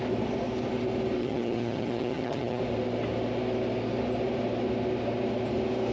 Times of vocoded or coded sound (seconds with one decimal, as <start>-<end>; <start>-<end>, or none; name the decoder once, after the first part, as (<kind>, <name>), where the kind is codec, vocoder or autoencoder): 1.2-2.6 (vocoder, HiFi-GAN)